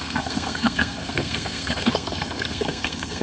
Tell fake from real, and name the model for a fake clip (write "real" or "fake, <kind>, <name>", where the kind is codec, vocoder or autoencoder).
fake, codec, SNAC